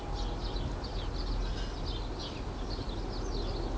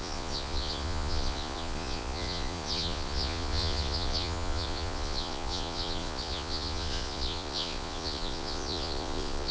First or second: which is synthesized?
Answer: second